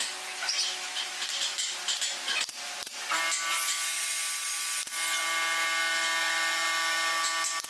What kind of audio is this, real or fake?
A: real